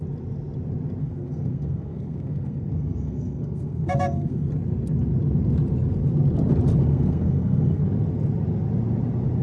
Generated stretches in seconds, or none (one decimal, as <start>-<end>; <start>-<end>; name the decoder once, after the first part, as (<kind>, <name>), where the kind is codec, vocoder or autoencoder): 1.0-4.5 (codec, SNAC); 6.9-7.8